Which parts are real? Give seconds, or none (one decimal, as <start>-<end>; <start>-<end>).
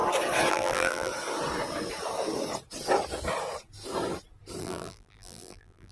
0.0-0.5; 1.1-4.6